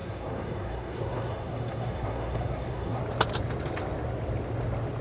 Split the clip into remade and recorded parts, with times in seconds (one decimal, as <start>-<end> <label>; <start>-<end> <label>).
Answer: 0.0-3.0 remade; 3.0-5.0 recorded